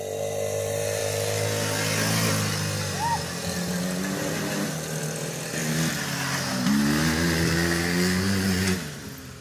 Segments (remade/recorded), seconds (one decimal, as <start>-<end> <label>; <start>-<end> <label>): 0.0-9.4 recorded